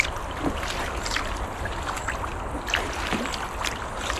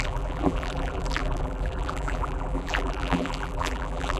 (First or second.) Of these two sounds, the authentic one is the first